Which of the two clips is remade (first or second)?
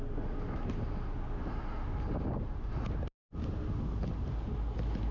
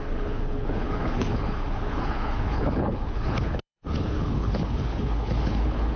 second